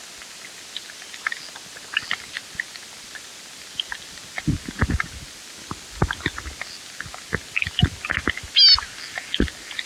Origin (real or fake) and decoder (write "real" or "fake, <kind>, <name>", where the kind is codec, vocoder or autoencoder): real